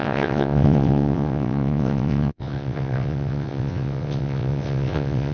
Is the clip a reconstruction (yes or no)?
yes